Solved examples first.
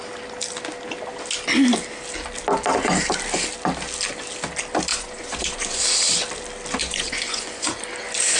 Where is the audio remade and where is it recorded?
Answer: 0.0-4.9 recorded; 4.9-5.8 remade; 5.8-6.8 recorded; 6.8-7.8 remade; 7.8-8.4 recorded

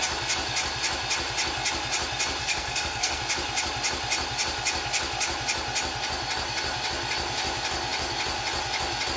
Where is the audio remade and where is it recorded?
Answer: 0.0-2.4 recorded; 2.4-3.2 remade; 3.2-9.2 recorded

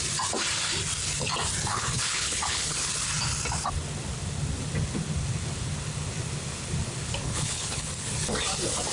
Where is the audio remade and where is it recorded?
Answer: 0.0-1.7 recorded; 1.7-2.9 remade; 2.9-7.2 recorded; 7.2-7.9 remade; 7.9-8.9 recorded

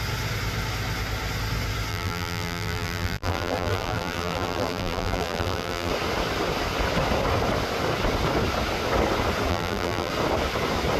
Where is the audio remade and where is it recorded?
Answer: 0.0-1.9 recorded; 1.9-5.9 remade; 5.9-9.5 recorded; 9.5-10.1 remade; 10.1-11.0 recorded